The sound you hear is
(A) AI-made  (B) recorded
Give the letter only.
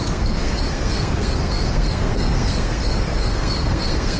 A